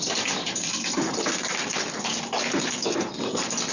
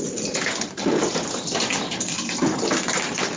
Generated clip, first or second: second